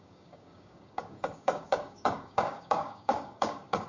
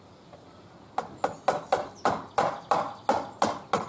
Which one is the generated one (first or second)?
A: first